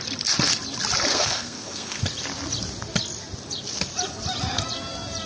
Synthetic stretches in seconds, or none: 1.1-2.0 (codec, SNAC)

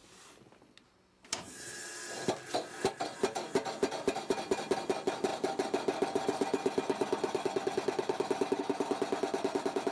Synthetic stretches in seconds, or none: none

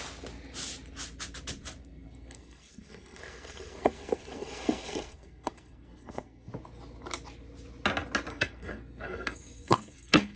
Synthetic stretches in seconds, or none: 1.8-6.5 (codec, SNAC); 8.3-10.4

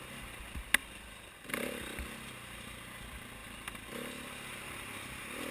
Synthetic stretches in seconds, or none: none

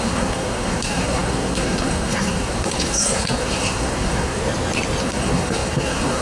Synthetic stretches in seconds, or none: 0.0-4.4 (codec, SNAC); 5.0-6.2